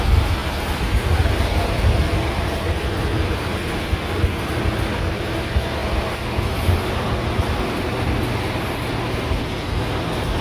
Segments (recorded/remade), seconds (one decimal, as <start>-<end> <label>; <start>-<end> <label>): 0.0-10.4 recorded